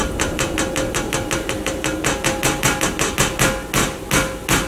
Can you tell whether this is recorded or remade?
recorded